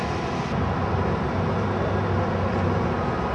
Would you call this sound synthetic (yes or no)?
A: no